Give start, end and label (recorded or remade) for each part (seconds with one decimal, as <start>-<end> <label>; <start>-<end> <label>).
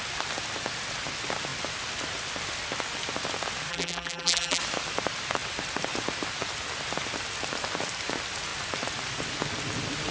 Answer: 0.0-3.7 recorded; 3.7-4.6 remade; 4.6-10.1 recorded